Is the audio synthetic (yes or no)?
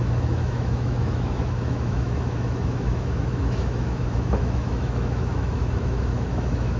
yes